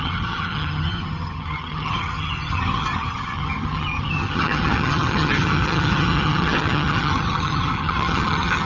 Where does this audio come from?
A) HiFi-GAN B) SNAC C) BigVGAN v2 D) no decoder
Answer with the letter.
A